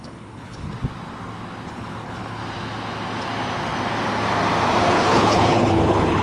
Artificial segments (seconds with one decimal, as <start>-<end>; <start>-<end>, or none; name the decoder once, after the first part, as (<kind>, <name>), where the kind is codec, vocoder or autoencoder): 0.0-0.7 (codec, HILCodec); 1.7-2.4; 4.9-6.2